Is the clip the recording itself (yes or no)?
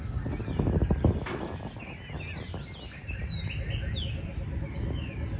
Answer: yes